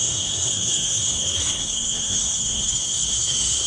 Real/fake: fake